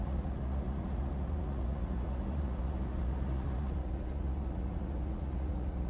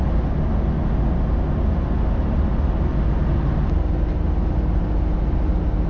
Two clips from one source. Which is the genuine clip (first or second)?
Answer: second